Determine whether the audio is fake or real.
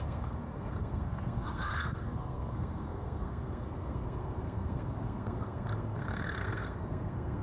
fake